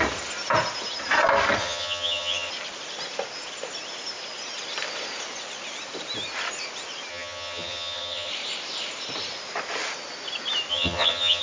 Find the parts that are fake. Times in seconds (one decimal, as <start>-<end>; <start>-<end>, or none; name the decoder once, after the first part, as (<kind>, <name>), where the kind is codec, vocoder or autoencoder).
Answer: 1.6-2.5 (vocoder, HiFi-GAN); 7.1-8.3; 10.7-11.4